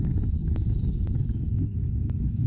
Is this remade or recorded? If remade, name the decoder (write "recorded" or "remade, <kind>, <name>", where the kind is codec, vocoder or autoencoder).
remade, autoencoder, DAC-VAE